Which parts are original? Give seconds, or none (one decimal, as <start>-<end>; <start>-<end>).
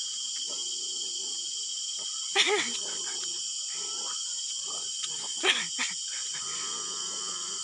0.0-7.6